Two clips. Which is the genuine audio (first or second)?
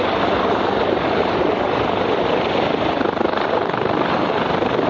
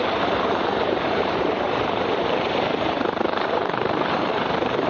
first